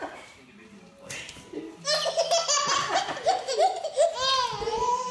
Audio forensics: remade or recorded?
recorded